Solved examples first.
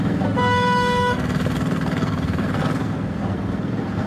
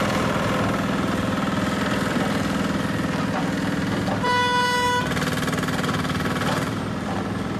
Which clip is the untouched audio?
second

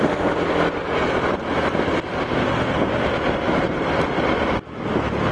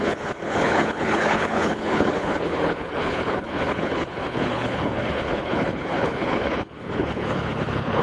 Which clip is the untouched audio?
first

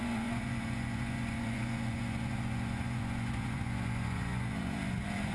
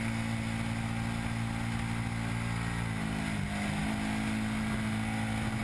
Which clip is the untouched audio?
second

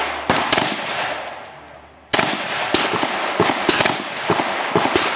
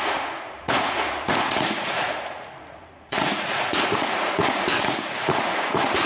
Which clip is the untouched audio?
first